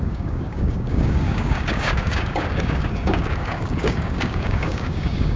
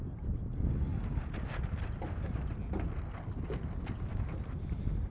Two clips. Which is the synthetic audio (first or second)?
first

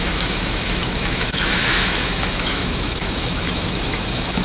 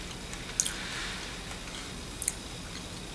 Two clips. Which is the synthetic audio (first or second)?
first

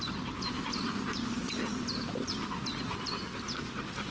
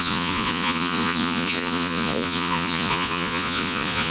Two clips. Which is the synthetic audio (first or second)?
second